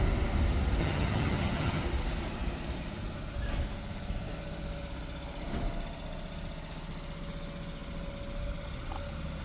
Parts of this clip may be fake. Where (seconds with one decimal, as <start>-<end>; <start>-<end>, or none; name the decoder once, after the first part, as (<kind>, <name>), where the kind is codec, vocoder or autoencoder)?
0.8-1.8 (vocoder, HiFi-GAN)